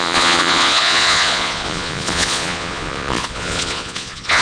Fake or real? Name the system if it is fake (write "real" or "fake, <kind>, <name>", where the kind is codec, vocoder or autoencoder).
fake, vocoder, Vocos